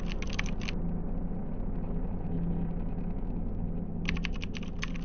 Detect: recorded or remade recorded